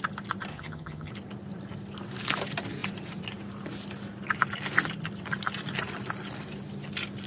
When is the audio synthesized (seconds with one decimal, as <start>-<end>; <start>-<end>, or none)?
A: 0.5-1.1